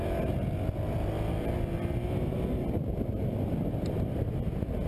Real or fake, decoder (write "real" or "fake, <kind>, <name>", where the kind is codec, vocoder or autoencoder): real